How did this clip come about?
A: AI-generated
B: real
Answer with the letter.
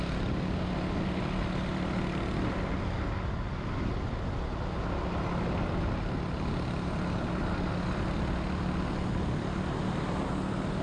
B